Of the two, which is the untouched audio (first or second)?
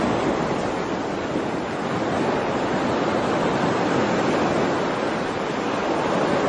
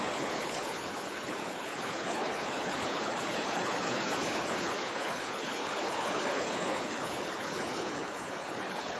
first